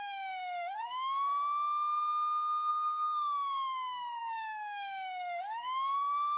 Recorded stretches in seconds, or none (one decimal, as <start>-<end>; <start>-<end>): 1.4-2.7